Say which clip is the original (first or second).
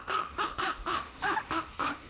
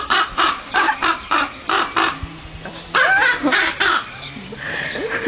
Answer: second